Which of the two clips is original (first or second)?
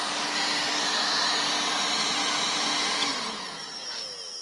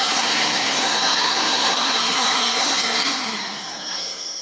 first